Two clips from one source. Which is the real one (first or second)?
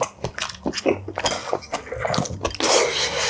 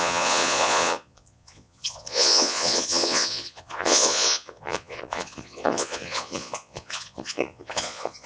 first